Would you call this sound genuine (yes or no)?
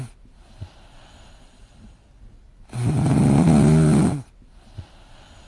yes